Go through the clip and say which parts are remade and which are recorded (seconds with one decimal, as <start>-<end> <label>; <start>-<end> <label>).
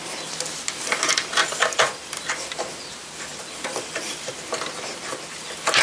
0.0-5.8 recorded